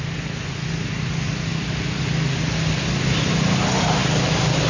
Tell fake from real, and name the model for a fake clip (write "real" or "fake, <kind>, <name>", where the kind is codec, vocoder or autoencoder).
real